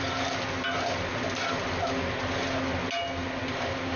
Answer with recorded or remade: recorded